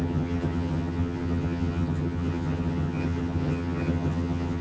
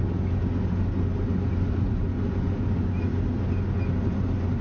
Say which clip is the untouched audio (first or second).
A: second